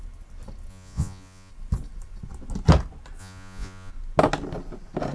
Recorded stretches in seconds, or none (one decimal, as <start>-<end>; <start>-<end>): 0.0-0.7; 1.5-3.2; 3.9-5.1

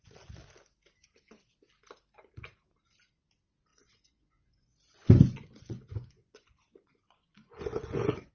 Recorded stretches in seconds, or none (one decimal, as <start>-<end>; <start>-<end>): 0.0-3.7

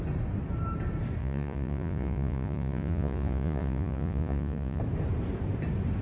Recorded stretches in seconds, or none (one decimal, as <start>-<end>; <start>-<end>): 0.0-1.2; 4.8-6.0

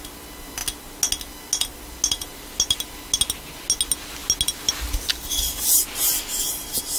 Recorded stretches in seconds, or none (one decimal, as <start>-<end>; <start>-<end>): 0.0-7.0

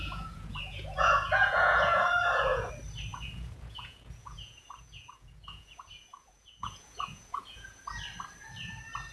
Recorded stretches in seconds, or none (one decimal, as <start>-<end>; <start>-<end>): 2.7-3.1; 7.8-9.1